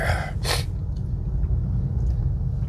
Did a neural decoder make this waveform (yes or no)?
no